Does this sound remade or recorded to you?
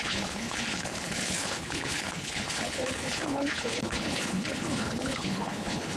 remade